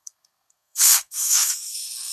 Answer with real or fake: fake